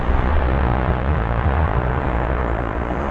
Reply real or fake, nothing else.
fake